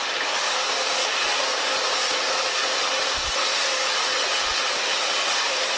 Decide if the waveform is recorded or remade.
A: recorded